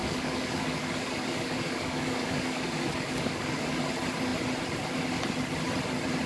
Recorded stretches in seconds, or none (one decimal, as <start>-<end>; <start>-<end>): 3.8-6.3